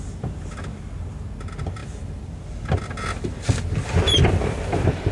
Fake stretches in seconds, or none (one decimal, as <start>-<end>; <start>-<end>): none